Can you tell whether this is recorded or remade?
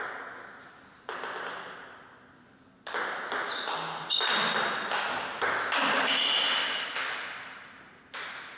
recorded